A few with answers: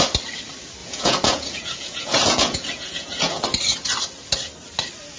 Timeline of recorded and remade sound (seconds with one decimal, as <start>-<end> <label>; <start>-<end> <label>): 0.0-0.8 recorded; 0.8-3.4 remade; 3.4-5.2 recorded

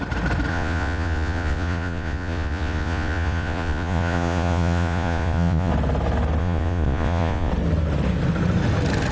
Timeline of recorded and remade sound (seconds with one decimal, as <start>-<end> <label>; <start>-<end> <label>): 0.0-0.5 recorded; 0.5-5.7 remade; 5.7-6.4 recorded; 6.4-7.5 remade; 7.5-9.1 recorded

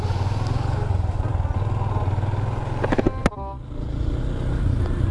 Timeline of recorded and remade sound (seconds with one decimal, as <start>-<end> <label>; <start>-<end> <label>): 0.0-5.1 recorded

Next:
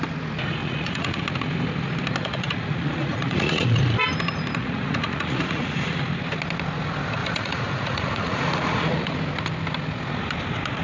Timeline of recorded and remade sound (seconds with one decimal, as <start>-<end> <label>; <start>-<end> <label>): 0.0-0.6 recorded; 0.6-1.2 remade; 1.2-2.2 recorded; 2.2-3.8 remade; 3.8-4.6 recorded; 4.6-6.0 remade; 6.0-7.2 recorded; 7.2-9.1 remade; 9.1-10.8 recorded